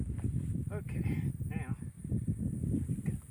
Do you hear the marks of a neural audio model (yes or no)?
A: no